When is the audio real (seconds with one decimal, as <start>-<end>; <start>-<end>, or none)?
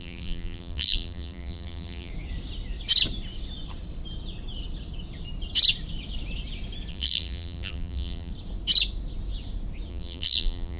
2.1-6.9; 8.3-9.9